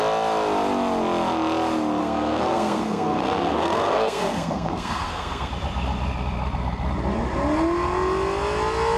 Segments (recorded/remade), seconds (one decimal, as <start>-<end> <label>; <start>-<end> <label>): 0.0-2.0 recorded; 2.0-5.5 remade; 5.5-9.0 recorded